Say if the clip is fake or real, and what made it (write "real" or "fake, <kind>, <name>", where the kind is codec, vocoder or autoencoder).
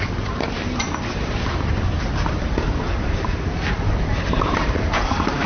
fake, vocoder, BigVGAN v2